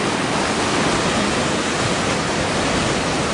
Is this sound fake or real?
real